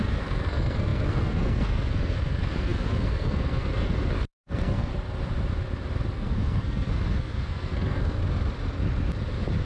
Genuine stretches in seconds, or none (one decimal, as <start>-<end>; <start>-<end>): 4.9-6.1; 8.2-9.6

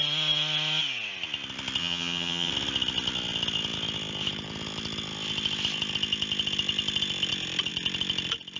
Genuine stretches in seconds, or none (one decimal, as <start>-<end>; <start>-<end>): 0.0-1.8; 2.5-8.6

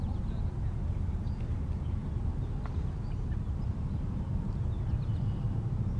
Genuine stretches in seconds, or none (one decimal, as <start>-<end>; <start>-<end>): 0.0-6.0

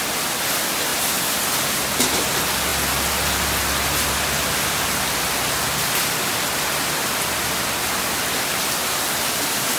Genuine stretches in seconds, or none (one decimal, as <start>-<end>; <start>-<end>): 0.0-9.8